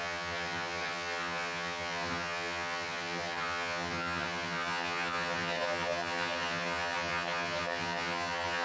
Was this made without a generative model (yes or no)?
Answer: no